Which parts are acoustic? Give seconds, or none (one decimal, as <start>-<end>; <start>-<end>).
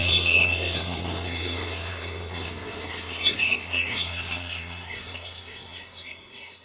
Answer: none